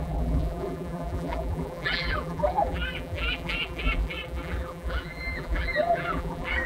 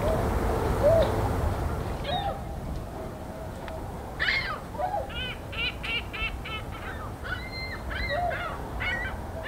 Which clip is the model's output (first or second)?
first